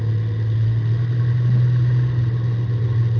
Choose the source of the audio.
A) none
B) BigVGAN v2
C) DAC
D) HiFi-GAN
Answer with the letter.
A